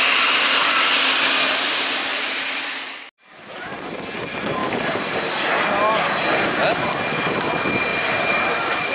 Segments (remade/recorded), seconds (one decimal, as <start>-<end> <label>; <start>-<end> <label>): 0.0-4.6 recorded; 4.6-5.2 remade; 5.2-7.9 recorded; 7.9-8.9 remade